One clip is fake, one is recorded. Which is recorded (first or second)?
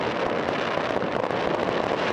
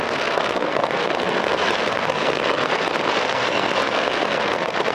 first